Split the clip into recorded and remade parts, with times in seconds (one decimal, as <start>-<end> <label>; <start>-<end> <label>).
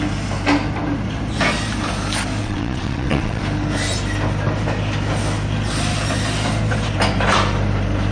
0.0-2.4 recorded; 2.4-3.4 remade; 3.4-8.1 recorded